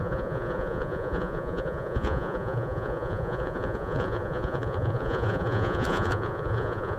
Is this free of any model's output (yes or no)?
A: no